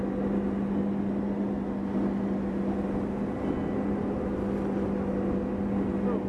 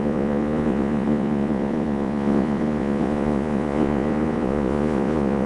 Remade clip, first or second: second